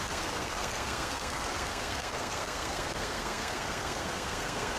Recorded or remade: remade